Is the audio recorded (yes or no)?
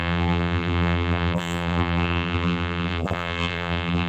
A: no